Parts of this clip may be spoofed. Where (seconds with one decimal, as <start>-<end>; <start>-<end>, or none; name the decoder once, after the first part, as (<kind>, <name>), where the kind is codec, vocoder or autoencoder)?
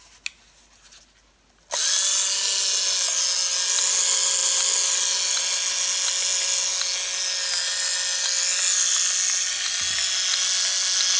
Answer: none